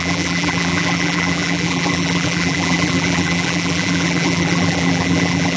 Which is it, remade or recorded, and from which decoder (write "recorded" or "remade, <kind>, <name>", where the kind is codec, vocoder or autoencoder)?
remade, vocoder, BigVGAN v2